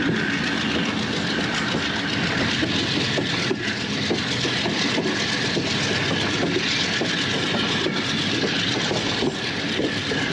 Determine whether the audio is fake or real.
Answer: real